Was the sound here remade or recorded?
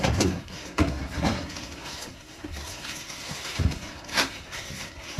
remade